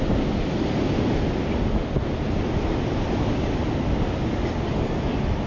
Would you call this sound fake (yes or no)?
no